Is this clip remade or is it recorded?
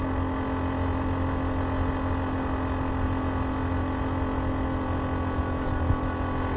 recorded